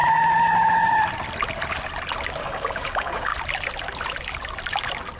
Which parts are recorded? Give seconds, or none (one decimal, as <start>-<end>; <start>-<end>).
0.0-2.4; 3.3-5.2